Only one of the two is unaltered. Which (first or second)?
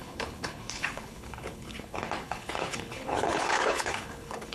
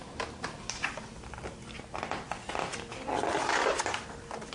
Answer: second